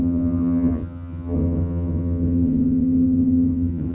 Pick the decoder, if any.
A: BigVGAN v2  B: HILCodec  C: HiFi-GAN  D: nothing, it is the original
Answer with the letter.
C